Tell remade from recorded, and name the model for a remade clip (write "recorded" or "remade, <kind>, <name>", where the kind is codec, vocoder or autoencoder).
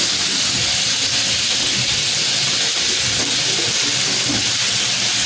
recorded